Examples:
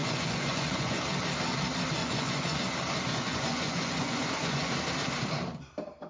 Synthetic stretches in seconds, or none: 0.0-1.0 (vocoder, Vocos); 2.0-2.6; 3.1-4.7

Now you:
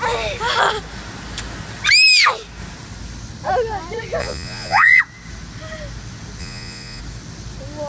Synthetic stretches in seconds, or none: 4.2-5.0 (vocoder, Vocos); 6.4-7.0

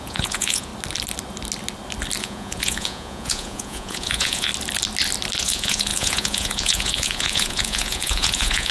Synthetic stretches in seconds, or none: 0.0-0.7 (vocoder, Vocos); 2.2-4.5; 5.4-8.7

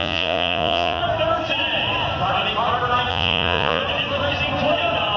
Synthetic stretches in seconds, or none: 0.0-1.0 (vocoder, Vocos); 3.1-3.8